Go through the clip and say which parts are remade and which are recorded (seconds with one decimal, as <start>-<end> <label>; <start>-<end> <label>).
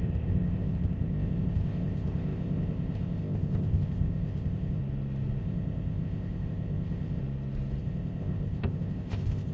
0.0-4.8 remade; 4.8-5.4 recorded; 5.4-7.2 remade; 7.2-7.8 recorded; 7.8-9.5 remade